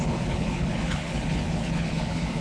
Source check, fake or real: fake